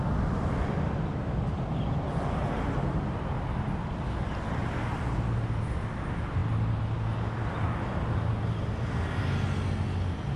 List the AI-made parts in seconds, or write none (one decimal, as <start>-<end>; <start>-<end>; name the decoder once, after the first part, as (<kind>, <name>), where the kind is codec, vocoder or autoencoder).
none